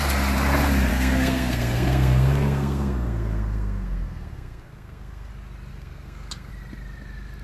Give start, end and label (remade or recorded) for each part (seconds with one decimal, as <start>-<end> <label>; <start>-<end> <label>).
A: 0.0-0.9 recorded; 0.9-5.3 remade; 5.3-5.7 recorded; 5.7-6.5 remade; 6.5-7.4 recorded